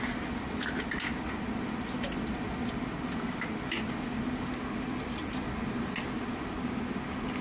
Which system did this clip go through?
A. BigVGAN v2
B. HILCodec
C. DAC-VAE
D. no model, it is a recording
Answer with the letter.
D